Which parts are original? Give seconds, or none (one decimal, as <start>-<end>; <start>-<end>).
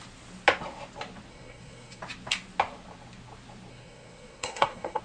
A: 0.0-1.3; 2.0-3.7